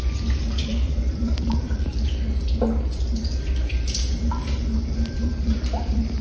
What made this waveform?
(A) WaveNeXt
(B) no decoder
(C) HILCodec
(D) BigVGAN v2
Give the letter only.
D